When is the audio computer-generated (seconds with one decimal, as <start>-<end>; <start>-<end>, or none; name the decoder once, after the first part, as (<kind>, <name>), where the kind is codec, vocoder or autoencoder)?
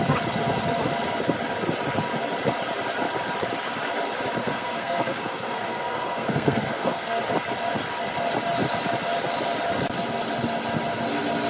4.4-7.2 (codec, SNAC)